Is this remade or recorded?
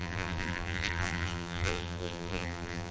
remade